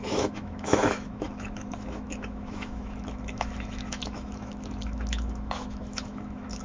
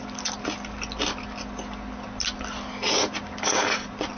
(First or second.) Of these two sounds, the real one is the second